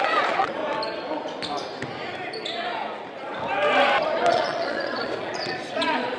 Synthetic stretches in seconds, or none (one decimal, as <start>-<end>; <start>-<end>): 0.0-0.6; 4.3-6.2